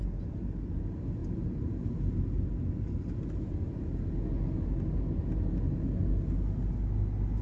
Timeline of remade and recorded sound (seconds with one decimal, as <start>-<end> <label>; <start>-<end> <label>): 0.0-1.2 recorded; 1.2-1.9 remade; 1.9-7.4 recorded